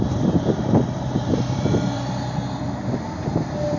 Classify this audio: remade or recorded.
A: remade